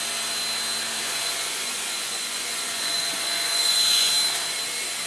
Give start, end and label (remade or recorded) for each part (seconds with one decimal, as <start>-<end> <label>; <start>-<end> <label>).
0.0-1.0 recorded; 1.0-4.1 remade; 4.1-5.1 recorded

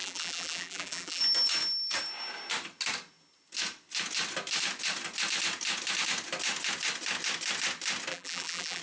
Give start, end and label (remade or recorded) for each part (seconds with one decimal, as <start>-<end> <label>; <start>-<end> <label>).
0.0-1.2 remade; 1.2-8.1 recorded; 8.1-8.8 remade

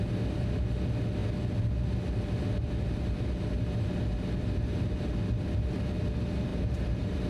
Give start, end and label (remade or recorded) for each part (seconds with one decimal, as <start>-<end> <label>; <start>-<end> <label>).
0.0-6.5 recorded; 6.5-7.3 remade

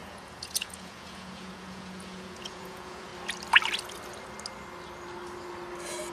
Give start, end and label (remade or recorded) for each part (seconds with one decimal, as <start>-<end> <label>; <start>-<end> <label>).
0.0-3.1 remade; 3.1-6.1 recorded

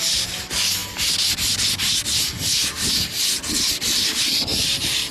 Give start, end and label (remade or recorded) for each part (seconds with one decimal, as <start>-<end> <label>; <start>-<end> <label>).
0.0-5.1 recorded